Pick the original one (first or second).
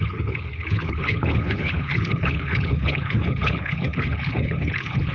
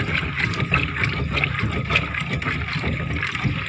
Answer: second